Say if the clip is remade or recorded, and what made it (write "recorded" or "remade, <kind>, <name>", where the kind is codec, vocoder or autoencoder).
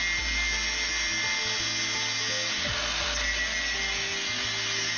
recorded